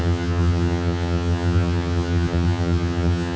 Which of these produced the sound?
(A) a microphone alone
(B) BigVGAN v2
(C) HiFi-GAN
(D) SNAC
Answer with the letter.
C